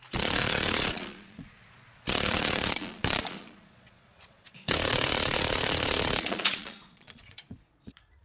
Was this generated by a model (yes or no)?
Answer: yes